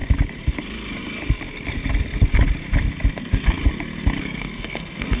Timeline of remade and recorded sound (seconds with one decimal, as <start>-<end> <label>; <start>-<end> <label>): 0.0-3.1 recorded; 3.1-3.6 remade; 3.6-4.2 recorded; 4.2-5.2 remade